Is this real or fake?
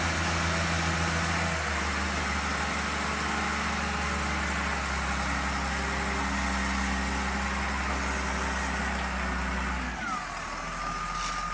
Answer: real